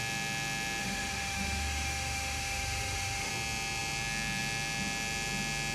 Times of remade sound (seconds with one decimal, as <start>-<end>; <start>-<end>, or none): 0.8-3.3